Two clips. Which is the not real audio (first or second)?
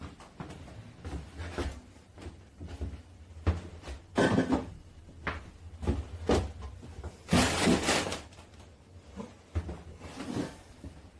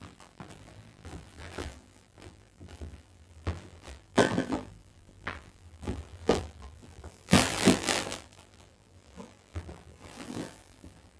second